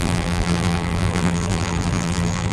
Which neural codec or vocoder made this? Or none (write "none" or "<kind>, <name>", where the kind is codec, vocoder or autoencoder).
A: vocoder, BigVGAN v2